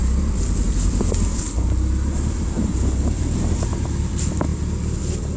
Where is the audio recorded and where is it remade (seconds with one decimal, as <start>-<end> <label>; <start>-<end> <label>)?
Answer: 0.0-5.4 recorded